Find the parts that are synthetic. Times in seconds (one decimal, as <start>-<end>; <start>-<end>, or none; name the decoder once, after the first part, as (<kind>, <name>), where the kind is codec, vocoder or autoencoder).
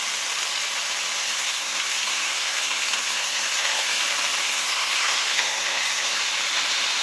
1.2-4.0 (codec, SNAC); 4.4-6.2